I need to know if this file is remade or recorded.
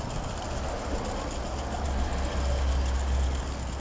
recorded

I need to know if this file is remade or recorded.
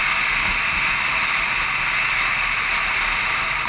recorded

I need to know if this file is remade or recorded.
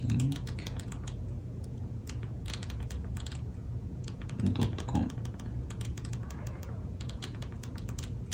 remade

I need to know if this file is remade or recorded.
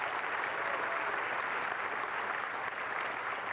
recorded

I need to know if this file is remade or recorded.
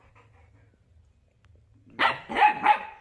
recorded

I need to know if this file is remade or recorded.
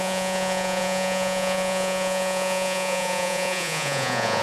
remade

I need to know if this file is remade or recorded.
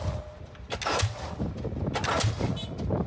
recorded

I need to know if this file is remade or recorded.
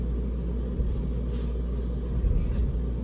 recorded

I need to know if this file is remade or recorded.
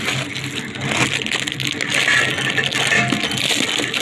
recorded